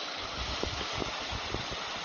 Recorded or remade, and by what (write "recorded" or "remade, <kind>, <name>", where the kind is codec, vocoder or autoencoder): recorded